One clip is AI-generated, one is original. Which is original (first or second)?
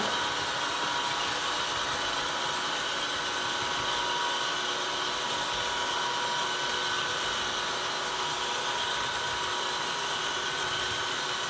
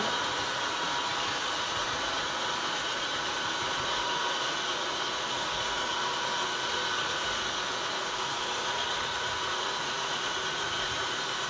first